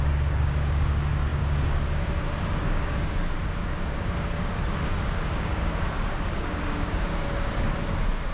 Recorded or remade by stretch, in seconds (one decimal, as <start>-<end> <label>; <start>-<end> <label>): 0.0-8.3 remade